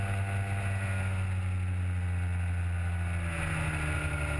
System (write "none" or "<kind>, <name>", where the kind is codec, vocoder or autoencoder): none